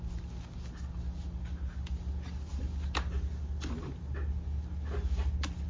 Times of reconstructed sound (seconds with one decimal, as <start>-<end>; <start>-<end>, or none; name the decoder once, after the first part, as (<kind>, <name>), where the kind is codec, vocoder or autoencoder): none